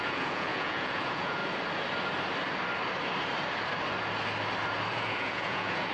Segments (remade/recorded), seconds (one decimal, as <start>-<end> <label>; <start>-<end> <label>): 0.0-1.4 remade; 1.4-4.9 recorded; 4.9-5.9 remade